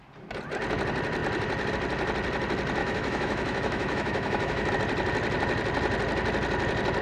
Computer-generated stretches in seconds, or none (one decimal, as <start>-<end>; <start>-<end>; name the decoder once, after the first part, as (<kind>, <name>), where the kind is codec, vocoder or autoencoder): 2.8-4.7 (autoencoder, DAC-VAE)